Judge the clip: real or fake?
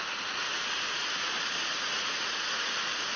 fake